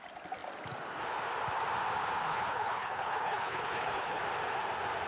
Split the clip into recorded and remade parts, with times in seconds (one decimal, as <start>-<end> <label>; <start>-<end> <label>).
0.0-2.3 recorded; 2.3-4.2 remade; 4.2-5.1 recorded